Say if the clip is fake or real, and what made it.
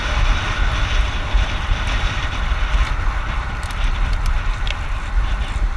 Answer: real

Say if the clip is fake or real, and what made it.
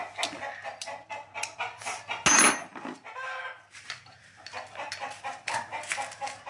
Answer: real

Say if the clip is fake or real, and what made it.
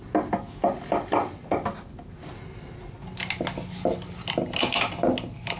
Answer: real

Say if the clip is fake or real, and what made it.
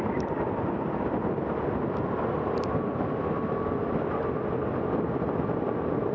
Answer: real